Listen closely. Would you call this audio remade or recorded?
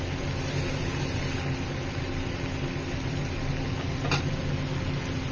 recorded